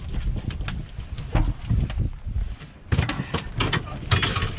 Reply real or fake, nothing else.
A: real